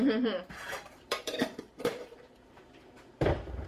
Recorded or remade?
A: remade